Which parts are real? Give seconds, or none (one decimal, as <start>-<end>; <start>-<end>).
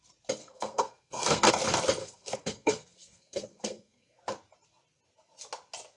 0.0-0.4; 1.5-2.0; 4.2-6.0